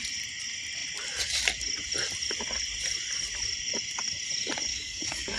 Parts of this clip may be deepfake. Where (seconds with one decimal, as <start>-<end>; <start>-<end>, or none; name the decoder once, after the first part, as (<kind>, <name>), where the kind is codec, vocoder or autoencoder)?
4.7-5.4 (codec, DAC)